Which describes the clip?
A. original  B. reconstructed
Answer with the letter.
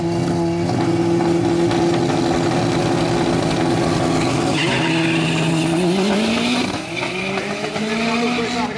A